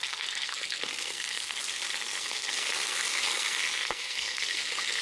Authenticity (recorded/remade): remade